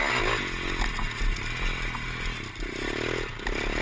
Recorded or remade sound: recorded